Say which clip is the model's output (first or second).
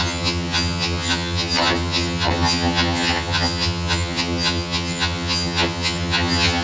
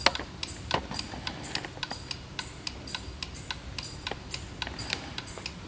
first